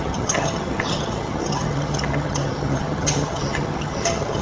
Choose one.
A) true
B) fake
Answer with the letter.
B